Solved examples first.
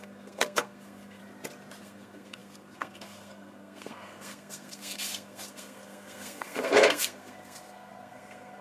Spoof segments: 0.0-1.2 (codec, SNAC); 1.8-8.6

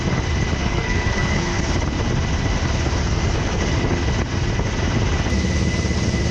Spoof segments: 0.6-1.6 (codec, SNAC); 3.0-3.6

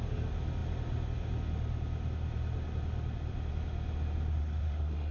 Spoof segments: 4.3-5.1 (codec, SNAC)